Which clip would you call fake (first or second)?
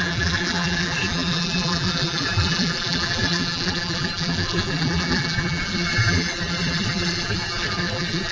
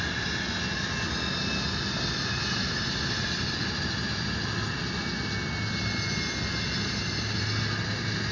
first